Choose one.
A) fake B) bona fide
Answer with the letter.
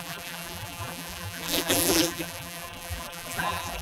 A